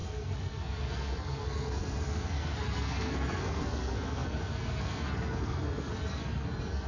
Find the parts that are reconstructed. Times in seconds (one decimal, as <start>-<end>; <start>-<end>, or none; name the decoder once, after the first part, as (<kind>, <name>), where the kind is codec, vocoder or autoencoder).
0.0-6.9 (codec, SNAC)